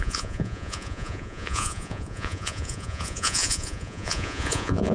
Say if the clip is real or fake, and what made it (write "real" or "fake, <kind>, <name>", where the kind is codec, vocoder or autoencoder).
fake, vocoder, Vocos